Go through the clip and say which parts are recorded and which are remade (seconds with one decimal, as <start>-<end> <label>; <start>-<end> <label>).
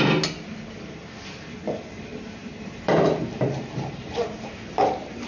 0.0-2.4 recorded; 2.4-5.3 remade